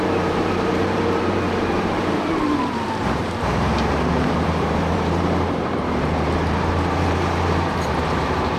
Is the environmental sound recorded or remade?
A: remade